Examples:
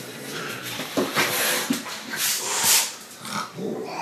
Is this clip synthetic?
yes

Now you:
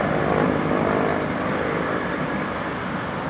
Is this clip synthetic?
no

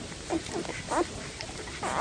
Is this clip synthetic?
no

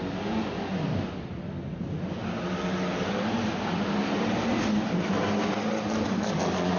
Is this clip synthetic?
no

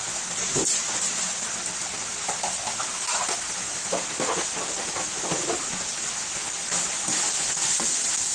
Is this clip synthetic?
no